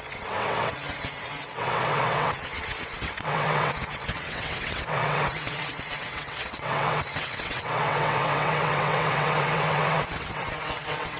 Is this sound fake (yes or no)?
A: yes